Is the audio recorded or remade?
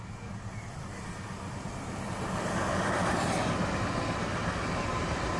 recorded